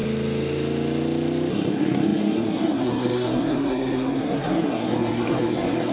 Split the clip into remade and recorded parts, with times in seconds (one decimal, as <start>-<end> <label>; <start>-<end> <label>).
0.0-1.5 recorded; 1.5-5.9 remade